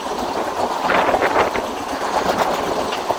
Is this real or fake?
real